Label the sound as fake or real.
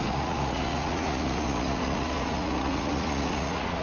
fake